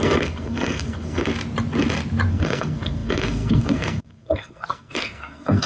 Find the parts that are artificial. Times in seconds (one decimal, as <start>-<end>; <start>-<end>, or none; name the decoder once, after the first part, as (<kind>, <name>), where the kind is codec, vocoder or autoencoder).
0.0-1.3 (codec, SNAC); 2.3-5.7